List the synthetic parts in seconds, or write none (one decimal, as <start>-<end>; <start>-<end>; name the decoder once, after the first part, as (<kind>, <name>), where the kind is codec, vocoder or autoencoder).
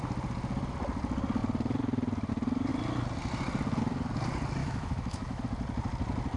4.6-5.4 (autoencoder, DAC-VAE)